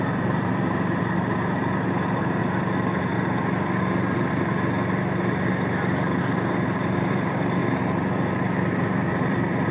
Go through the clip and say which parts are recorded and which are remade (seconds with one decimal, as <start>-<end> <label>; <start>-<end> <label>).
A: 0.0-2.4 remade; 2.4-6.2 recorded; 6.2-7.6 remade; 7.6-8.7 recorded; 8.7-9.7 remade